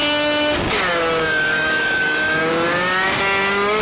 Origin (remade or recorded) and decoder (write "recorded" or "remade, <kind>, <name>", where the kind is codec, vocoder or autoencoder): remade, codec, DAC